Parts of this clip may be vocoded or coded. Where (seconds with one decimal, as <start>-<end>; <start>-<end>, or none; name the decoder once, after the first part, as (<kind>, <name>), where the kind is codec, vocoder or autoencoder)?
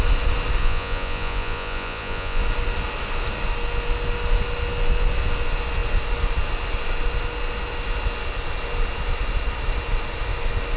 0.6-2.4 (vocoder, Vocos)